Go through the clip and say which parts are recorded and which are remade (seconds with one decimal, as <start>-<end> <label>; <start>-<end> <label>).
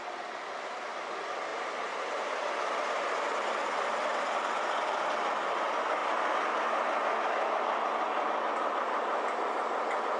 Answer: 0.0-10.2 recorded